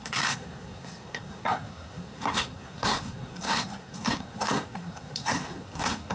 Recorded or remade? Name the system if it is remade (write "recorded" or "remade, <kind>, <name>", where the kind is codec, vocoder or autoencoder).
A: remade, codec, SNAC